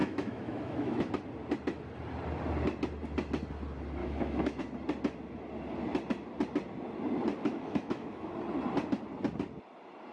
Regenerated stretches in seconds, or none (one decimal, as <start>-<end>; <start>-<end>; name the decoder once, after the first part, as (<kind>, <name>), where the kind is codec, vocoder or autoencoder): 0.0-1.1 (autoencoder, DAC-VAE); 4.0-4.6; 7.4-8.3